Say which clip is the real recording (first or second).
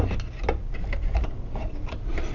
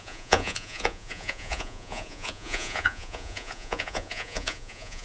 first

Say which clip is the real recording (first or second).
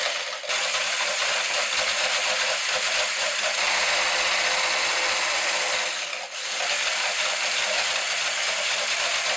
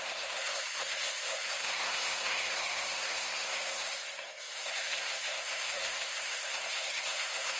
first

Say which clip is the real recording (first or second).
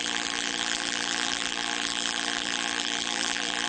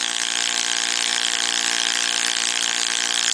second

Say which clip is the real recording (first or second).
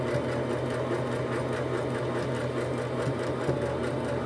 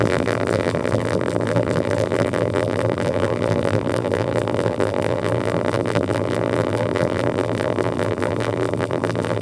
first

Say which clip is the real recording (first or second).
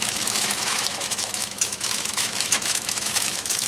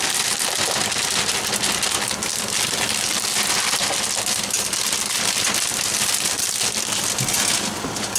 second